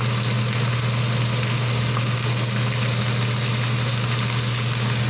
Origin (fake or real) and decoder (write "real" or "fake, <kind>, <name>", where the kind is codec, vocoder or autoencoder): real